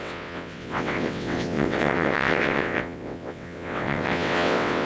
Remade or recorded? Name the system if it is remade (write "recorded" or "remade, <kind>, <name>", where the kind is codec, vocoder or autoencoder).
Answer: remade, vocoder, WaveNeXt